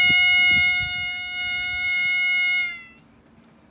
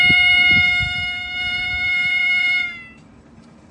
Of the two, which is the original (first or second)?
first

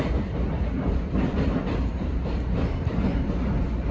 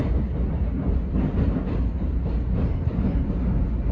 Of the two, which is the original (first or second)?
second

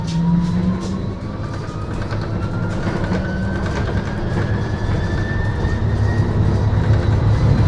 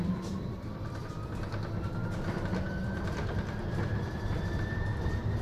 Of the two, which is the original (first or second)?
first